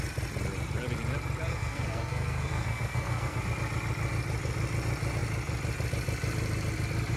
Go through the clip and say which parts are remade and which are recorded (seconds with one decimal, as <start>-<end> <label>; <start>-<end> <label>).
0.0-1.5 recorded; 1.5-3.4 remade; 3.4-7.2 recorded